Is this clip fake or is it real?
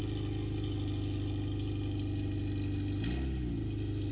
real